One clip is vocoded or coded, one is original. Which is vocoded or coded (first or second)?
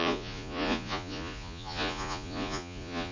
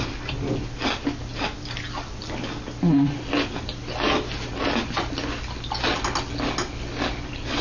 first